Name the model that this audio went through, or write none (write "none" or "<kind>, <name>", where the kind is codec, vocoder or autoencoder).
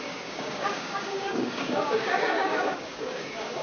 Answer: codec, DAC